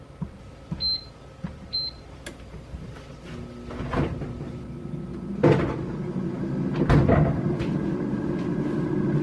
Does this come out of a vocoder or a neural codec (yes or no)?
no